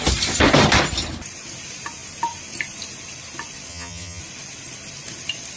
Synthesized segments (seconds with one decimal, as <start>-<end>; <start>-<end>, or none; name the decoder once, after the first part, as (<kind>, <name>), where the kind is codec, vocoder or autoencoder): 3.7-4.2 (vocoder, HiFi-GAN)